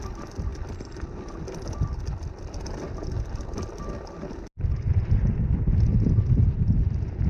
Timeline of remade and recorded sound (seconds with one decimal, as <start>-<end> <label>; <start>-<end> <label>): 0.0-7.3 recorded